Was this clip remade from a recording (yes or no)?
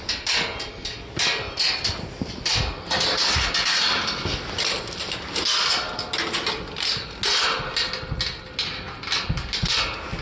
no